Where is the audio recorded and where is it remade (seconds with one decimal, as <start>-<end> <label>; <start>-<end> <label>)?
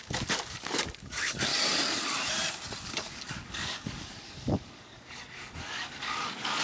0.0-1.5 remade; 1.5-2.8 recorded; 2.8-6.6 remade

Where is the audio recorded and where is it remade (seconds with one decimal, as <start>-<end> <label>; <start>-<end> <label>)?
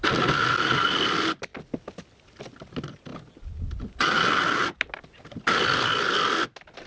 0.0-6.9 recorded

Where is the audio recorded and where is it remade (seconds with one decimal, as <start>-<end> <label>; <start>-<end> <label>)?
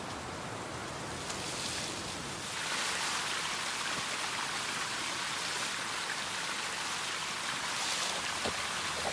0.0-9.1 recorded